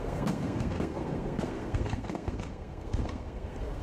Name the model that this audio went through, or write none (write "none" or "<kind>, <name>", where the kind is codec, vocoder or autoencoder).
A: codec, SNAC